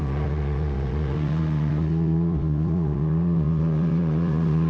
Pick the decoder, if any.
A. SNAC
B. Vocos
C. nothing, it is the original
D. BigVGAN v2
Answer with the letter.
B